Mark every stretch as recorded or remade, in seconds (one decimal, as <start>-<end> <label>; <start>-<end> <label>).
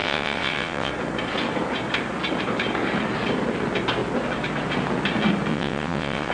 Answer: 0.0-0.9 remade; 0.9-5.5 recorded; 5.5-6.3 remade